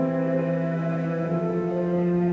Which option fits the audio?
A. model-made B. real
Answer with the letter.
A